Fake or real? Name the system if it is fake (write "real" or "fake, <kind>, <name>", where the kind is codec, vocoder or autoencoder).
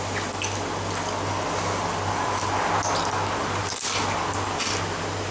real